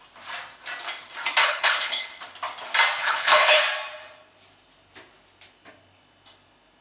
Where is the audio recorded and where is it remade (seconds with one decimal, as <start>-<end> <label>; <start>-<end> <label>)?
0.0-1.4 recorded; 1.4-2.2 remade; 2.2-3.0 recorded; 3.0-3.6 remade; 3.6-6.8 recorded